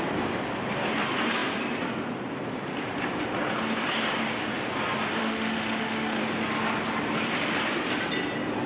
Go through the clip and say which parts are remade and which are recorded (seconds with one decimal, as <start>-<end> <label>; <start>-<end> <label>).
0.0-5.2 recorded; 5.2-6.2 remade; 6.2-8.7 recorded